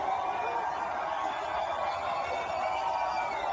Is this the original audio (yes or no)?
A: yes